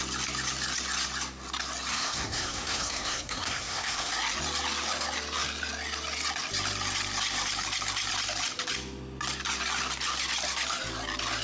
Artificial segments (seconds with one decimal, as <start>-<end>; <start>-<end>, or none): 1.9-4.1